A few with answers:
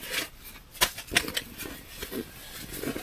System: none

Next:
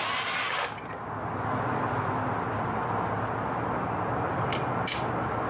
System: none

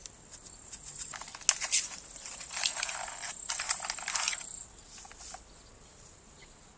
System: none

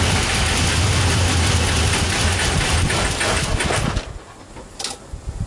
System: none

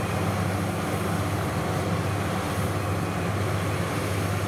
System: none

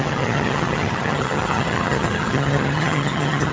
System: vocoder, HiFi-GAN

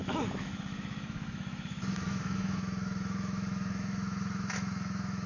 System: autoencoder, DAC-VAE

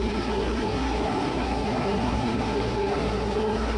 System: codec, SNAC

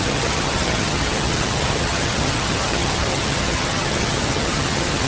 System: vocoder, HiFi-GAN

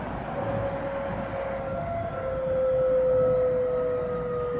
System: none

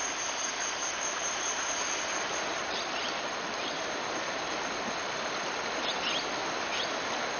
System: none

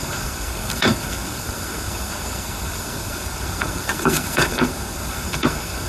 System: codec, SNAC